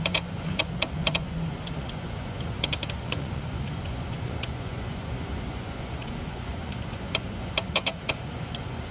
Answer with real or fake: fake